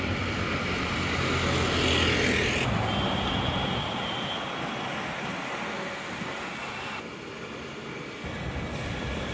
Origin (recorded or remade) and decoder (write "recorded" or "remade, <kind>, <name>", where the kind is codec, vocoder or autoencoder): recorded